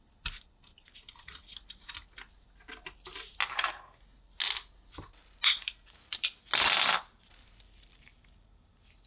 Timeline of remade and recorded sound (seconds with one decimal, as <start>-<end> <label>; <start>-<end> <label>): 0.0-3.5 recorded; 3.5-4.0 remade; 4.0-9.1 recorded